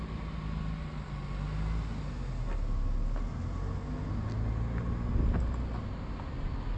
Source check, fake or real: real